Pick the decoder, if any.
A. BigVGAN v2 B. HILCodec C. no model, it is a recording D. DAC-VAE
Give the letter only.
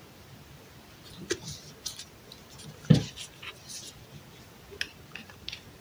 C